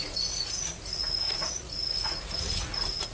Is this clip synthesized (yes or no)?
yes